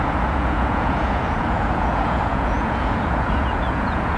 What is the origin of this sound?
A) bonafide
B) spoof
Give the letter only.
B